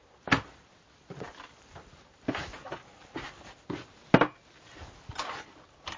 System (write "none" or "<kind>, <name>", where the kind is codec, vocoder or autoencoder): none